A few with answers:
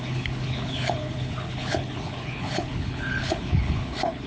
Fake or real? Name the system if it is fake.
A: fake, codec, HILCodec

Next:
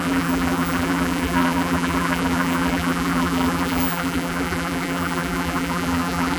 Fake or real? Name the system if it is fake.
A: fake, vocoder, BigVGAN v2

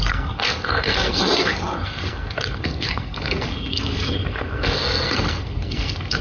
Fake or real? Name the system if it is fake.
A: fake, codec, SNAC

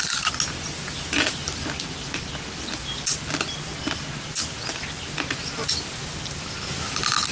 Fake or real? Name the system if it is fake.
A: real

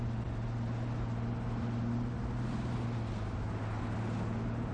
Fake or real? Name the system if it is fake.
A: real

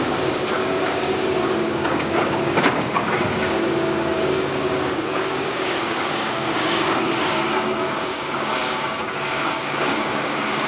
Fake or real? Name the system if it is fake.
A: fake, codec, DAC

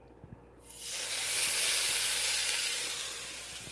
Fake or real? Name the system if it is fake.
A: real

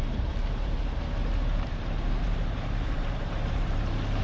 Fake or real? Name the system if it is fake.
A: fake, vocoder, BigVGAN v2